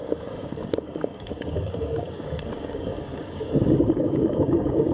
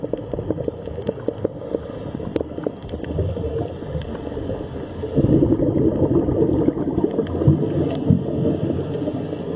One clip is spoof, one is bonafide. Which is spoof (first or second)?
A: first